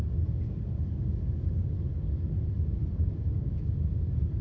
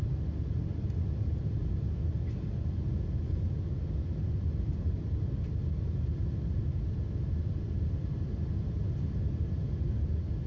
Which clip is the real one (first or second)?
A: second